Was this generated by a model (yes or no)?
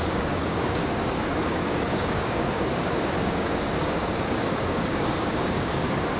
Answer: yes